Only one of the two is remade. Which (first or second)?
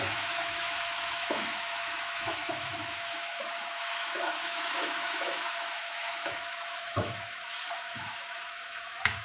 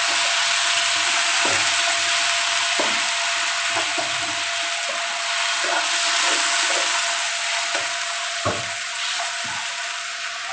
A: first